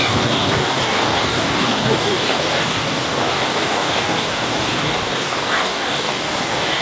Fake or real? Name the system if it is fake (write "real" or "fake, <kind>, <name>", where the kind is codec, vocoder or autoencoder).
fake, codec, DAC